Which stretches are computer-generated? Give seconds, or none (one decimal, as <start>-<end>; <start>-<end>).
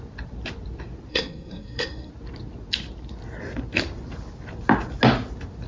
1.1-2.1